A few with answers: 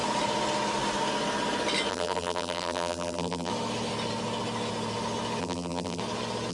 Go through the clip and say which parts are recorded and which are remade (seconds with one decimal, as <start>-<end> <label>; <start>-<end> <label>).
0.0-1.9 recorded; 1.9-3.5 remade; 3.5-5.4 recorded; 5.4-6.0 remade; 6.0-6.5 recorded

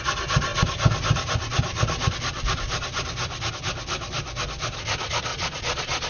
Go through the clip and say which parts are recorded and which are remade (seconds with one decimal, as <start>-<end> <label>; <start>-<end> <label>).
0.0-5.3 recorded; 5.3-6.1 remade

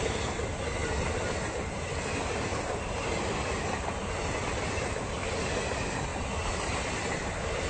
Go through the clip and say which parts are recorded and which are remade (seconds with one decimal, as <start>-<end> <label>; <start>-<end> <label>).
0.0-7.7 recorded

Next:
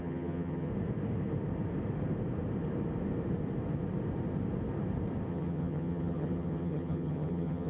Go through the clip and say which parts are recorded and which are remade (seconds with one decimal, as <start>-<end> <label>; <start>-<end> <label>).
0.0-0.7 remade; 0.7-5.3 recorded; 5.3-7.7 remade

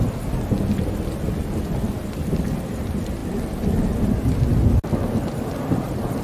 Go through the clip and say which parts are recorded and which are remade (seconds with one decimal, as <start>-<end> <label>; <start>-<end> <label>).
0.0-6.2 recorded

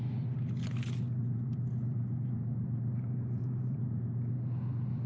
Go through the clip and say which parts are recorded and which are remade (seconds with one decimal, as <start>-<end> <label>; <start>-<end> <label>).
0.0-1.2 recorded; 1.2-4.3 remade; 4.3-5.1 recorded

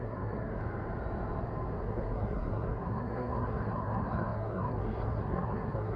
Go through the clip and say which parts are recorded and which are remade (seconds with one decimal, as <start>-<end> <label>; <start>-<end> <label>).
0.0-0.6 remade; 0.6-1.8 recorded; 1.8-6.0 remade

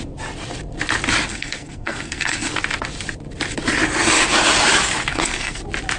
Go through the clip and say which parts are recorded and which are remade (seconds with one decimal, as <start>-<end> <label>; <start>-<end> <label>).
0.0-1.3 recorded; 1.3-2.5 remade; 2.5-5.1 recorded; 5.1-5.6 remade; 5.6-6.0 recorded